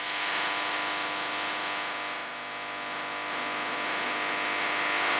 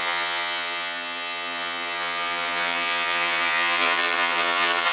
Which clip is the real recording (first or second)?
first